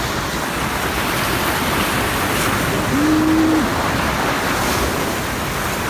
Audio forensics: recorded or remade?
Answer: recorded